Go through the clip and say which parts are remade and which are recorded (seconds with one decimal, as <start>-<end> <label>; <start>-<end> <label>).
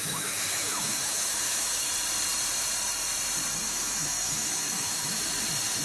0.0-1.9 remade; 1.9-3.6 recorded; 3.6-5.2 remade; 5.2-5.8 recorded